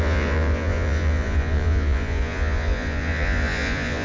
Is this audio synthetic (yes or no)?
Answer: yes